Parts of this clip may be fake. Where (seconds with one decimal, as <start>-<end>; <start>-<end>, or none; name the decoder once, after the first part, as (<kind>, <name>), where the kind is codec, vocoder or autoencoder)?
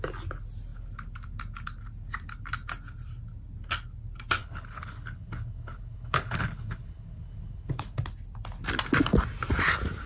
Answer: 4.4-8.0 (codec, HILCodec)